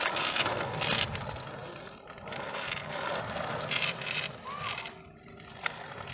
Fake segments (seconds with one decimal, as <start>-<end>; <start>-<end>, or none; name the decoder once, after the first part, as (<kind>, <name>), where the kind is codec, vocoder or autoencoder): none